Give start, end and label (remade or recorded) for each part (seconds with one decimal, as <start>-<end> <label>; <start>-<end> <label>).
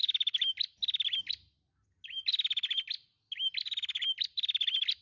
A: 0.0-5.0 recorded